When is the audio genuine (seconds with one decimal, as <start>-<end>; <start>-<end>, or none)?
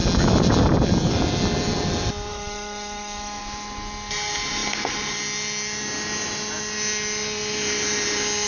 0.0-2.3; 3.4-8.5